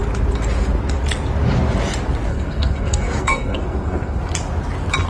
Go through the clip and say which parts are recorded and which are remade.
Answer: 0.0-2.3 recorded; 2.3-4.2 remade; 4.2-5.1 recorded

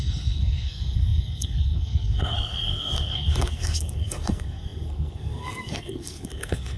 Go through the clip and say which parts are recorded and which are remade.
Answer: 0.0-6.8 remade

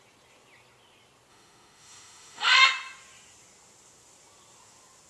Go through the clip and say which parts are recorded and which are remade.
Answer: 0.0-1.3 recorded; 1.3-2.5 remade; 2.5-5.1 recorded